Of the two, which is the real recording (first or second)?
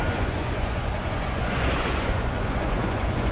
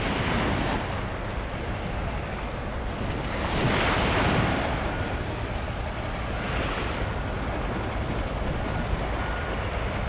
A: second